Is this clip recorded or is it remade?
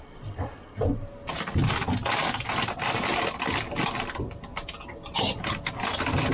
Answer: recorded